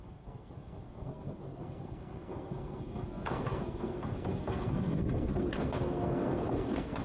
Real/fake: fake